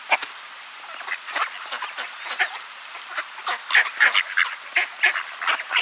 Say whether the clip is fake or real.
real